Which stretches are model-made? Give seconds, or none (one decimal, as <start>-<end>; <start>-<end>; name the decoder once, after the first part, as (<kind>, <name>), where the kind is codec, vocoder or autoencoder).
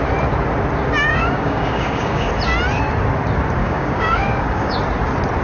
1.1-2.3 (codec, DAC); 3.6-4.8